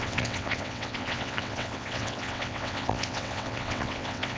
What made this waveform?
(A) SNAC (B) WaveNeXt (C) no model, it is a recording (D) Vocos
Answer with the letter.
B